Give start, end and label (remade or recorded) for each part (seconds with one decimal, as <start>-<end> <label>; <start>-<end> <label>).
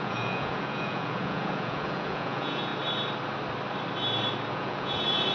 0.0-2.7 remade; 2.7-4.5 recorded; 4.5-5.3 remade